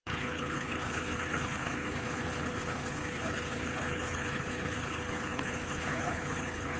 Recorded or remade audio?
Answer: remade